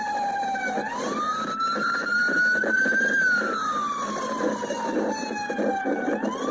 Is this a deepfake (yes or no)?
no